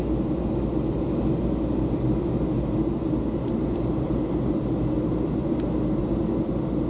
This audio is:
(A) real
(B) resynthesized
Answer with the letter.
A